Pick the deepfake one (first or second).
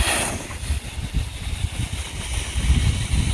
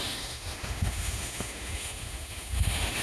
second